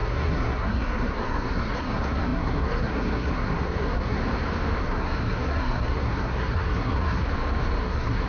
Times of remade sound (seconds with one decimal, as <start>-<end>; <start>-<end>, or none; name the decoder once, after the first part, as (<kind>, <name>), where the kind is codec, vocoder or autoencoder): 0.0-4.2 (codec, SNAC); 4.8-7.2; 7.8-8.3